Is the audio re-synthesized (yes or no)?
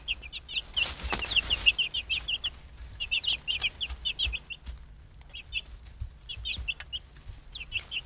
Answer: no